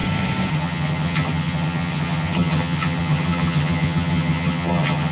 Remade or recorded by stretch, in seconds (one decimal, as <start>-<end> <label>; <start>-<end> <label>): 0.0-0.5 recorded; 0.5-5.1 remade

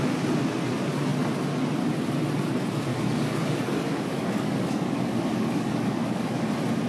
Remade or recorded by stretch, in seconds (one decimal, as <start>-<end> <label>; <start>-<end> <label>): 0.0-2.9 recorded; 2.9-6.5 remade; 6.5-6.9 recorded

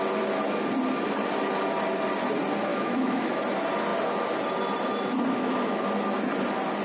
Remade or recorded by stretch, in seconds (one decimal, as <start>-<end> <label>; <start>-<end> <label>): 0.0-2.7 recorded; 2.7-3.3 remade; 3.3-5.4 recorded; 5.4-5.9 remade; 5.9-6.8 recorded

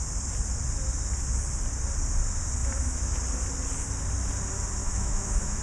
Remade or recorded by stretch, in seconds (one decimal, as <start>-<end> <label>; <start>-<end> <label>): 0.0-2.6 recorded; 2.6-3.1 remade; 3.1-4.8 recorded; 4.8-5.6 remade

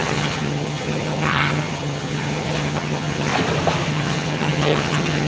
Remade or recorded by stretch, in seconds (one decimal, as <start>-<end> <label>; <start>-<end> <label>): 0.0-3.3 remade; 3.3-3.9 recorded; 3.9-5.3 remade

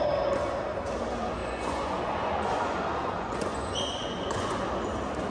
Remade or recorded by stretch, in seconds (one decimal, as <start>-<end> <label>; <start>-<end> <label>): 0.0-1.4 recorded; 1.4-4.6 remade; 4.6-5.3 recorded

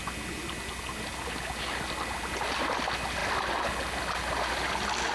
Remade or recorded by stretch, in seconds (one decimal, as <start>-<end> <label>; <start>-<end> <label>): 0.0-5.1 recorded

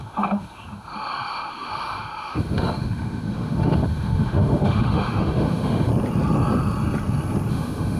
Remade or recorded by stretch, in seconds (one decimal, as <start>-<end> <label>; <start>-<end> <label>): 0.0-5.9 remade; 5.9-7.5 recorded; 7.5-8.0 remade